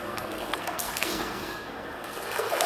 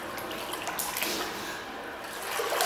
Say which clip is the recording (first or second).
second